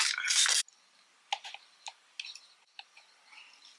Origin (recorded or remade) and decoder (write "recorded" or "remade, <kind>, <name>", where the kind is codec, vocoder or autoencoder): recorded